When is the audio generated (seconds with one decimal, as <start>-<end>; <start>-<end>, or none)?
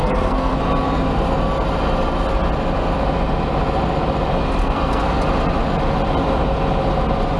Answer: 0.0-0.6; 4.6-5.2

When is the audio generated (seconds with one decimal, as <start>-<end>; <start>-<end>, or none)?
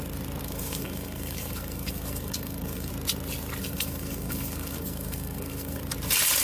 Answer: 0.4-2.9; 3.6-5.8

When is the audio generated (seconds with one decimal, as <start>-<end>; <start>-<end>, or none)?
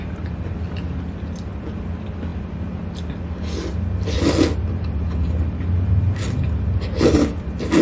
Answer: none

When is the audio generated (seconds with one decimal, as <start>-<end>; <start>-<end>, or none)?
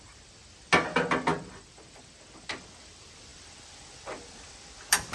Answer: none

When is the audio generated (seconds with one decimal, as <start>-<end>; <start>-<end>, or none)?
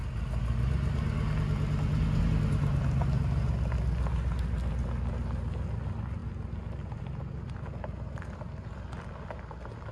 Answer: none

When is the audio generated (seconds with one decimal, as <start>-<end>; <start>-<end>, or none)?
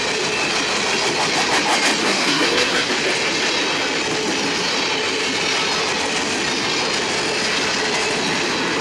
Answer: 2.0-2.9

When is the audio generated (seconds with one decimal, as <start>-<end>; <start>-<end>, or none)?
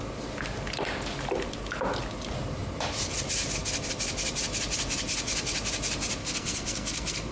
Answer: 6.2-7.3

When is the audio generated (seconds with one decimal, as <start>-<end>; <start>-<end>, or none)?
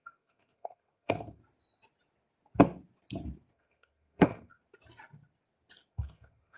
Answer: 0.0-1.4; 3.5-4.6; 5.9-6.6